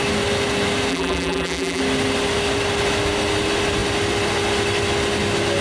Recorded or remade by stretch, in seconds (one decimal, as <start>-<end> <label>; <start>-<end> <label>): 0.0-0.9 recorded; 0.9-1.8 remade; 1.8-5.6 recorded